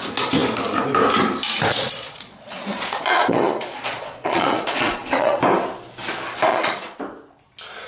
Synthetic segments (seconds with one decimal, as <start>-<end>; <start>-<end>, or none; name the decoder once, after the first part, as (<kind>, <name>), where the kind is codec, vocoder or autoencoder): 1.7-5.4 (vocoder, Vocos); 6.5-7.0